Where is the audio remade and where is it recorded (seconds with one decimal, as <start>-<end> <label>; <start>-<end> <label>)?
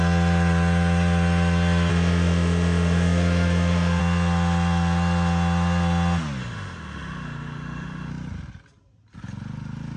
0.0-1.9 recorded; 1.9-4.0 remade; 4.0-6.4 recorded; 6.4-8.1 remade; 8.1-10.0 recorded